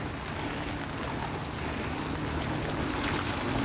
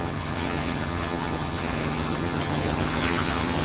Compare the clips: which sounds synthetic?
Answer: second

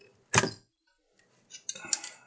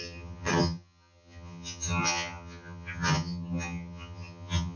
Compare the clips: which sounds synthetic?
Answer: second